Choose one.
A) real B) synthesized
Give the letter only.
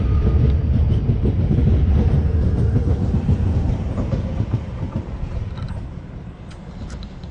A